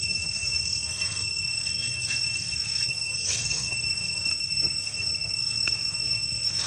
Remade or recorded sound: remade